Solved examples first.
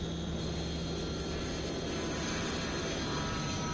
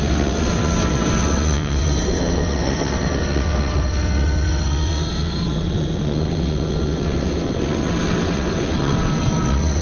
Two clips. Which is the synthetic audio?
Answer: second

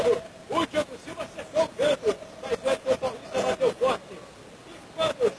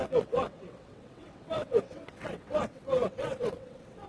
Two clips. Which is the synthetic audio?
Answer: second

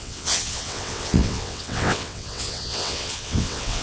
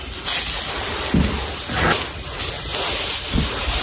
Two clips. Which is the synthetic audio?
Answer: first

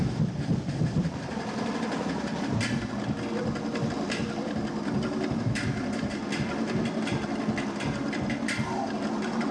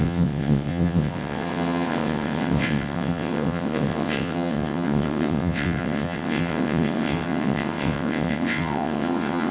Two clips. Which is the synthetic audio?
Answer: second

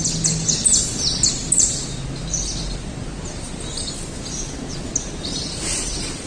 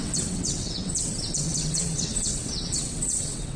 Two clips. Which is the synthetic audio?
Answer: second